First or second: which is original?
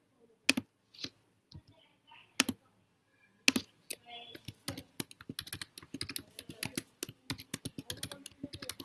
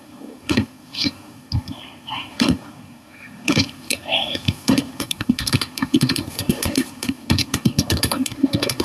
first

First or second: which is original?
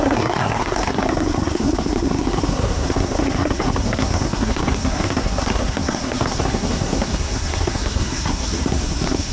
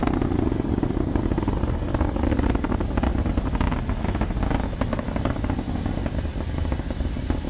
second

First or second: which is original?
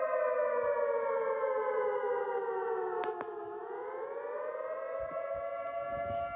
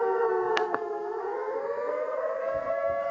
first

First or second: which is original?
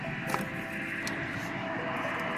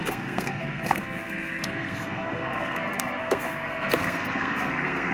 first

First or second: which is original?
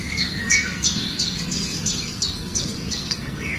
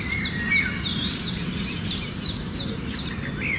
second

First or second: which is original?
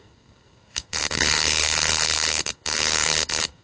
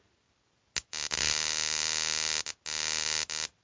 second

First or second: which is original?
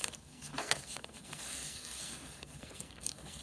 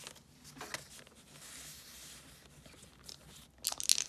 second